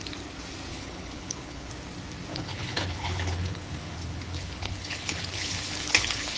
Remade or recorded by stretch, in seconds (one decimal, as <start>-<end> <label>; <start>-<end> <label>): 0.0-0.7 recorded; 0.7-1.7 remade; 1.7-2.3 recorded; 2.3-6.4 remade